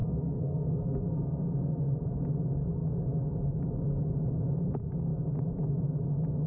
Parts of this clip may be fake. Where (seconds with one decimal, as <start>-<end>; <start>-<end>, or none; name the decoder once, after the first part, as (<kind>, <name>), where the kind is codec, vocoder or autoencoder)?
0.0-2.0 (codec, SNAC)

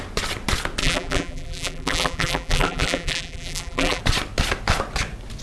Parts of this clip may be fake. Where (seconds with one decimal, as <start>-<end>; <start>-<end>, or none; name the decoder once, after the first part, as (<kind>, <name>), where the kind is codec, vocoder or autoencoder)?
0.8-4.0 (vocoder, BigVGAN v2)

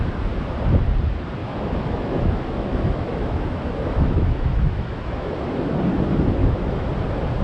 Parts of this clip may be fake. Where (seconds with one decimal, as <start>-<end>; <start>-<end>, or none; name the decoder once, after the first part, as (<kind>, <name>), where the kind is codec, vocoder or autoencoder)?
1.4-5.8 (autoencoder, DAC-VAE); 6.4-6.9

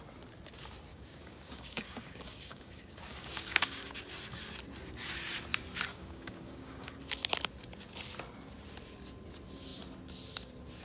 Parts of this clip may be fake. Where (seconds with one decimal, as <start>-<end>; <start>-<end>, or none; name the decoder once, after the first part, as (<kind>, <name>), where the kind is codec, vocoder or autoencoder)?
0.9-4.0 (codec, DAC); 5.9-6.9

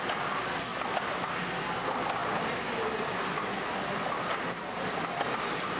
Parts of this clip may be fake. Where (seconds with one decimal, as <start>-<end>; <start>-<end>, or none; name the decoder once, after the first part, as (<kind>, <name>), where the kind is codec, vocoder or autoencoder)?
none

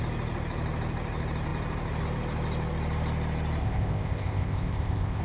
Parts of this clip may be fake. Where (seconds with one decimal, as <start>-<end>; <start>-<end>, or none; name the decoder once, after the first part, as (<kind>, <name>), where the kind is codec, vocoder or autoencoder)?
3.6-5.2 (codec, ZipCodec)

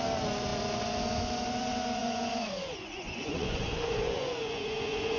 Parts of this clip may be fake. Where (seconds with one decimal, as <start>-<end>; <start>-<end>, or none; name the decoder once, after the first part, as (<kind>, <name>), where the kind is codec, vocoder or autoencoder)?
2.0-5.2 (vocoder, Vocos)